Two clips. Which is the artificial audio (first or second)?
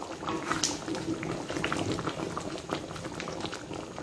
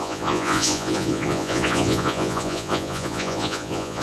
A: second